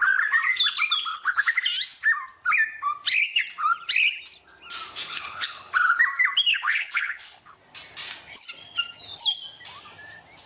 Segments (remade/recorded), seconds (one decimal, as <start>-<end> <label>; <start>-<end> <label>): 0.0-1.1 recorded; 1.1-1.6 remade; 1.6-5.0 recorded; 5.0-6.0 remade; 6.0-6.5 recorded; 6.5-7.6 remade; 7.6-10.5 recorded

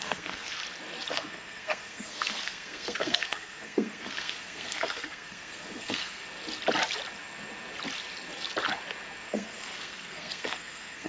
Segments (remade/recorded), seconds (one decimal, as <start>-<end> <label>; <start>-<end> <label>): 0.0-0.6 remade; 0.6-1.1 recorded; 1.1-6.2 remade; 6.2-9.3 recorded; 9.3-11.1 remade

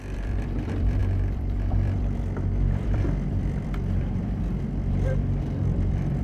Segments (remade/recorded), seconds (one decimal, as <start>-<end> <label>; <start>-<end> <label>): 0.0-6.2 remade

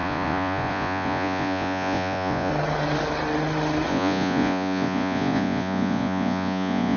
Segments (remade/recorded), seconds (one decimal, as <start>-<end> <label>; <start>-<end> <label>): 0.0-2.5 remade; 2.5-3.9 recorded; 3.9-7.0 remade

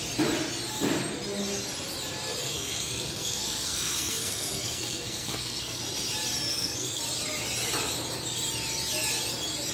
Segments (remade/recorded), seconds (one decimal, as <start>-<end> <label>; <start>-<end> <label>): 0.0-2.4 recorded; 2.4-5.8 remade; 5.8-6.5 recorded; 6.5-7.0 remade; 7.0-9.7 recorded